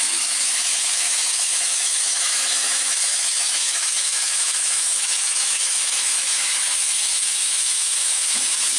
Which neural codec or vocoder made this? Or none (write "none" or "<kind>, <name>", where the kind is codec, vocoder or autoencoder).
autoencoder, DAC-VAE